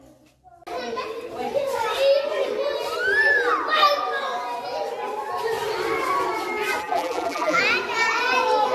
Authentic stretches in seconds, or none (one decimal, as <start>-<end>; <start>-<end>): 0.0-6.8; 7.6-8.7